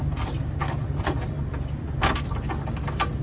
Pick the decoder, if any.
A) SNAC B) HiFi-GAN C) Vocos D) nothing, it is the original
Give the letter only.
D